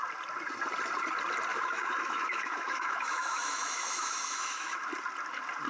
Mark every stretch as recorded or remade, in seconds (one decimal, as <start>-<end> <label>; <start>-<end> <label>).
0.0-1.5 recorded; 1.5-4.9 remade; 4.9-5.7 recorded